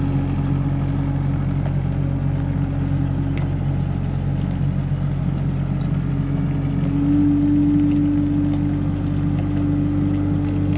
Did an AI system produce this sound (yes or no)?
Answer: no